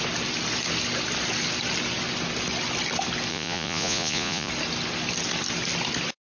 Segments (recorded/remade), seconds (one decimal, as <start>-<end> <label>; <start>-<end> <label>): 0.0-3.3 recorded; 3.3-4.5 remade; 4.5-6.4 recorded